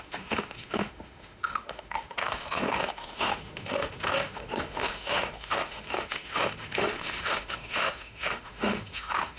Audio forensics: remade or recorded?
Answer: remade